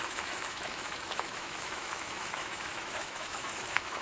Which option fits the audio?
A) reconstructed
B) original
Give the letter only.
A